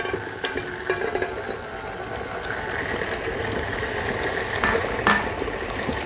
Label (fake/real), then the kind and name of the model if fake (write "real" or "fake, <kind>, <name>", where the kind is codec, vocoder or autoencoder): real